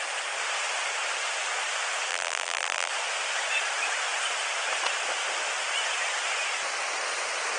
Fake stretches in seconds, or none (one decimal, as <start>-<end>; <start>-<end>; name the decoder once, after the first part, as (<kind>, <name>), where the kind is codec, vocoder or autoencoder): 2.1-2.9 (vocoder, BigVGAN v2)